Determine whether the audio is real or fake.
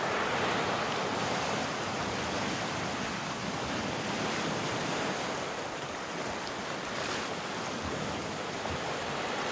real